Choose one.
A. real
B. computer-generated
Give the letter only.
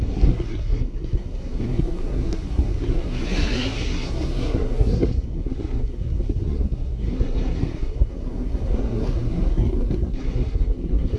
B